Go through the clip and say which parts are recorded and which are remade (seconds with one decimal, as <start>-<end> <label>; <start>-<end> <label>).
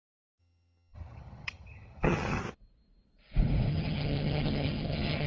0.0-0.4 recorded; 0.4-2.4 remade; 2.4-3.7 recorded; 3.7-5.3 remade